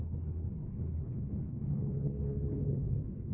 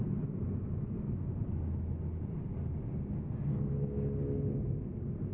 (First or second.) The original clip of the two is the second